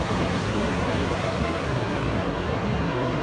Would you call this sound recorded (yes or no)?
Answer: no